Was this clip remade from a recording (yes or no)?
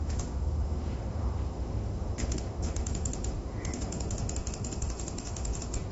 yes